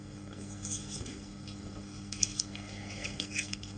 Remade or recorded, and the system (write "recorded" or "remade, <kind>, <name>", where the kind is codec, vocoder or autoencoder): remade, codec, SNAC